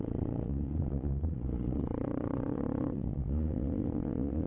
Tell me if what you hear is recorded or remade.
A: remade